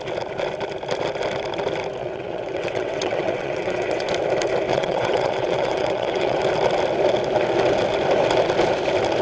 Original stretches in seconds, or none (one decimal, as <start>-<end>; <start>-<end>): 0.0-2.0; 4.1-4.7; 6.4-9.2